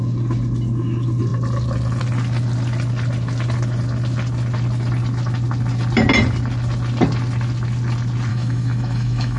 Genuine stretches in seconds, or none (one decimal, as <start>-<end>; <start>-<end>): 0.0-8.3